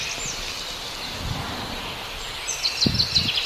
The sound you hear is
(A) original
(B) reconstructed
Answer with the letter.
A